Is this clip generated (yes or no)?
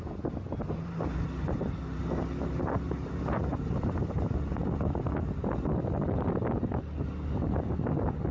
no